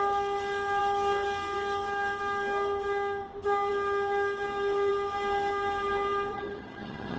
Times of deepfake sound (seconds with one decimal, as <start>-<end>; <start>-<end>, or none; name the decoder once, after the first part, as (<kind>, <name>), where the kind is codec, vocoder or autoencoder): 6.3-7.2 (vocoder, HiFi-GAN)

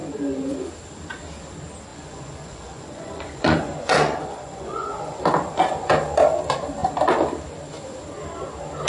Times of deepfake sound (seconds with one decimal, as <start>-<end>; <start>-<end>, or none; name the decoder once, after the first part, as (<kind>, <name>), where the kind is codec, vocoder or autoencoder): 1.9-5.2 (vocoder, Vocos)